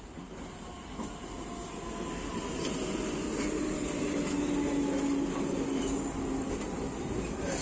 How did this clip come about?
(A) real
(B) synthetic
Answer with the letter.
A